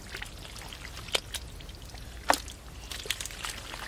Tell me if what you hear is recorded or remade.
recorded